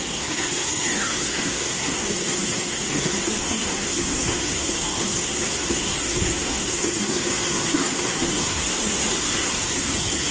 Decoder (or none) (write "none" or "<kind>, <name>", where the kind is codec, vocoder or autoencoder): codec, SNAC